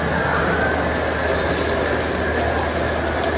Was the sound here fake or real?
real